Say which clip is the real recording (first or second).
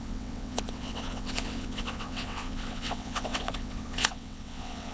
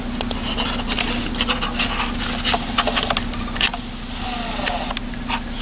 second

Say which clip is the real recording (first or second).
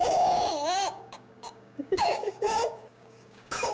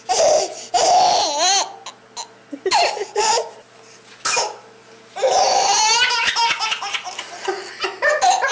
second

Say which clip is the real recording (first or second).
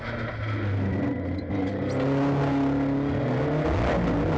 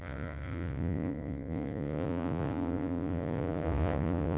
first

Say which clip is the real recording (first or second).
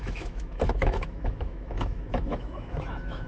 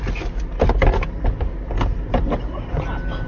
second